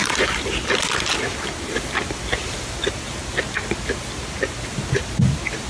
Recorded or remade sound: recorded